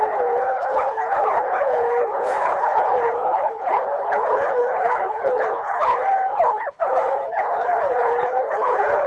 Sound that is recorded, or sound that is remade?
remade